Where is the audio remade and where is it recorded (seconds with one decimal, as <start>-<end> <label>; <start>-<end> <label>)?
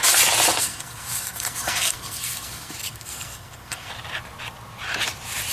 0.0-0.6 recorded; 0.6-3.9 remade; 3.9-5.5 recorded